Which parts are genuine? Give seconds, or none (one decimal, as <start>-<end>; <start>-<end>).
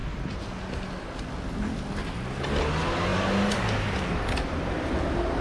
0.0-5.4